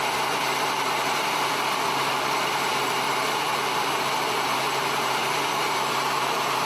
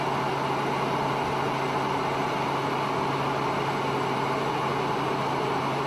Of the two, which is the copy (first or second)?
first